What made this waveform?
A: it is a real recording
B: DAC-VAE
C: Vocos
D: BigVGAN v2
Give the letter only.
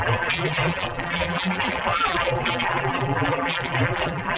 D